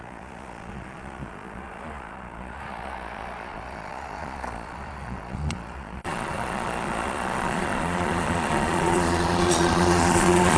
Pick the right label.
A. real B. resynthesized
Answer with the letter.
B